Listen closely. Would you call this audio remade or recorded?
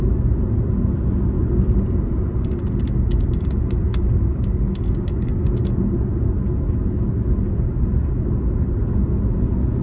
recorded